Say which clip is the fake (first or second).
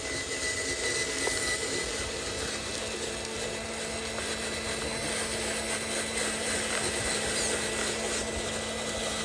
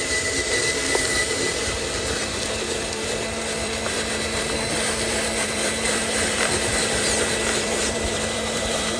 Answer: second